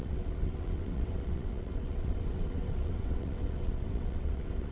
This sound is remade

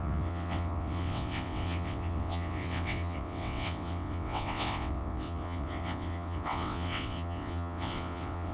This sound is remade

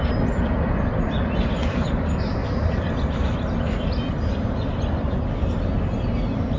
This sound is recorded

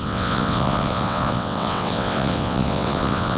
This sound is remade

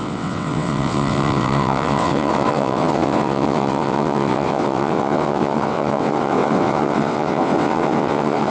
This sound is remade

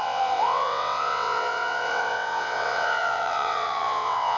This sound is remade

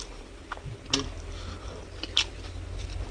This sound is recorded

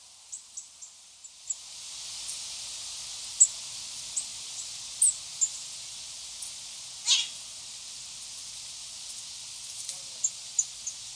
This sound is recorded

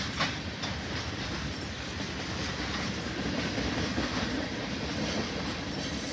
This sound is recorded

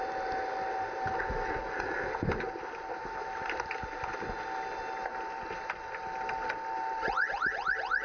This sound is recorded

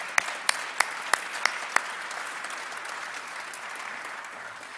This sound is recorded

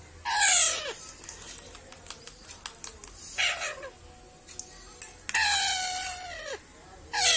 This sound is recorded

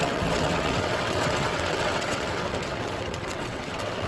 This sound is remade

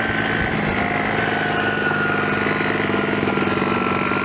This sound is recorded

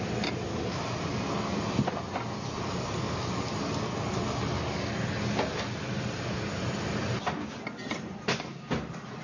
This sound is recorded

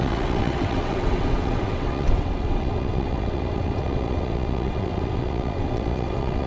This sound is remade